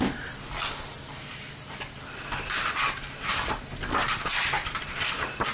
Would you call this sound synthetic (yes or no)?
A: no